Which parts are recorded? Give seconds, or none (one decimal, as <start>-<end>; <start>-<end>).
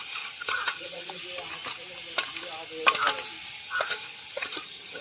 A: 1.2-3.6